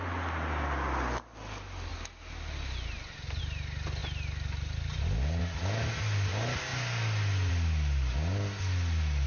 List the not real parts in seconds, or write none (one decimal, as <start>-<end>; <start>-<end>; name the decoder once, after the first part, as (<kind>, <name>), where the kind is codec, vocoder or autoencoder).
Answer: none